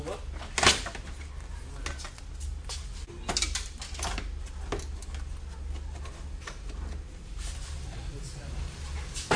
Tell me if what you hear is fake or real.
real